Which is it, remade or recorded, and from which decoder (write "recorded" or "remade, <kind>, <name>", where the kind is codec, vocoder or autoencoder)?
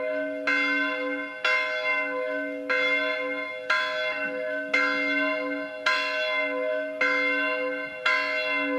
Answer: recorded